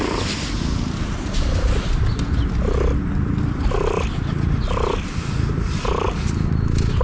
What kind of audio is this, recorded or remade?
recorded